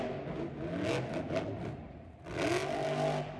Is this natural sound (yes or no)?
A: yes